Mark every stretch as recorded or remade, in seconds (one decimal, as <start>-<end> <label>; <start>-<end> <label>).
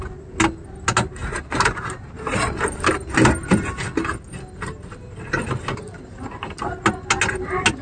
0.0-7.8 recorded